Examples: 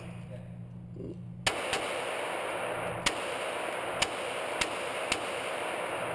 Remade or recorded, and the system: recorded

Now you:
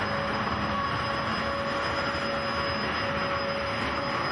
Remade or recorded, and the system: recorded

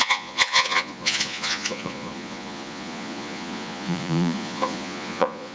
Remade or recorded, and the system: remade, vocoder, Vocos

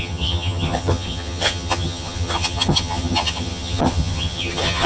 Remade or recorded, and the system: remade, vocoder, HiFi-GAN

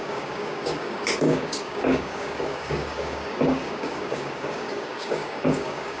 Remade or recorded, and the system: remade, codec, DAC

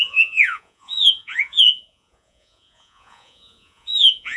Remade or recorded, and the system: remade, vocoder, Vocos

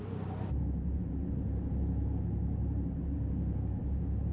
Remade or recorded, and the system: recorded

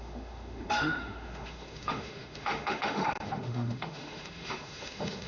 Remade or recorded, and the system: remade, autoencoder, DAC-VAE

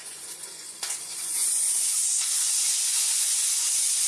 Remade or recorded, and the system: remade, vocoder, Vocos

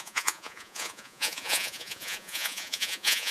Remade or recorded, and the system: remade, vocoder, Vocos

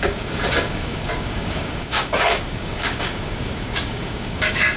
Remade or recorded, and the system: remade, codec, DAC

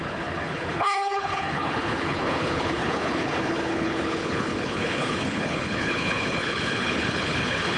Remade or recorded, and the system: remade, codec, HILCodec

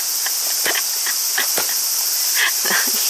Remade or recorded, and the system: recorded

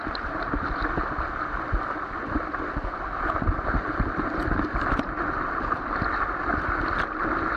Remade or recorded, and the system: remade, vocoder, BigVGAN v2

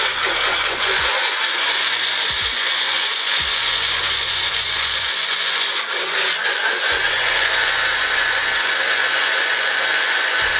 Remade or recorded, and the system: remade, vocoder, Vocos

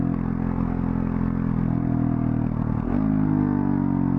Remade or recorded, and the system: recorded